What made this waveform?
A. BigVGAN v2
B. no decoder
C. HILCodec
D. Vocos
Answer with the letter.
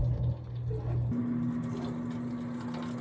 B